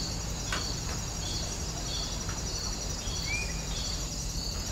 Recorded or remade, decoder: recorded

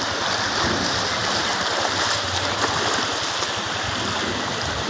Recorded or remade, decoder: recorded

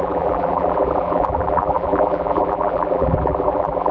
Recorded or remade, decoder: remade, vocoder, BigVGAN v2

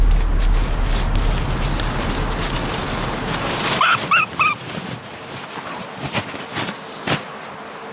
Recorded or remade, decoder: recorded